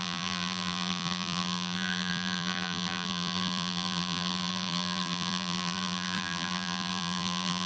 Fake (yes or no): yes